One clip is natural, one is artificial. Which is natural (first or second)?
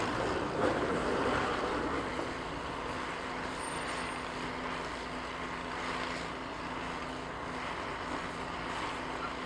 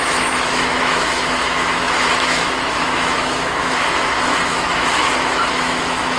first